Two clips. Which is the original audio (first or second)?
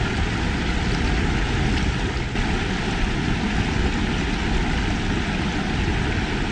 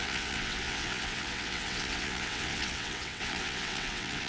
first